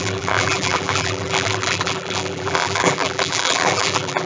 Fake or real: fake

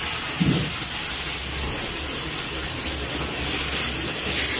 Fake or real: real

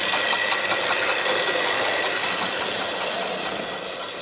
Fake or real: real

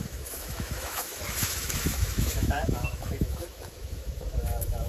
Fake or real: fake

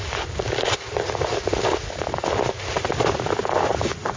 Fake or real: real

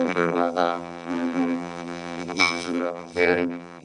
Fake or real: fake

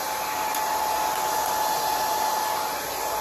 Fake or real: real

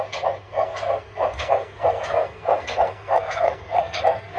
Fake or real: fake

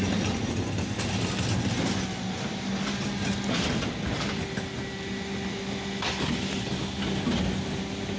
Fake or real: real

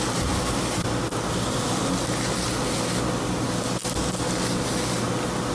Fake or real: real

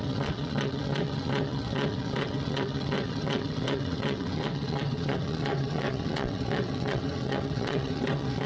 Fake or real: fake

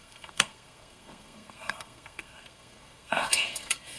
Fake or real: fake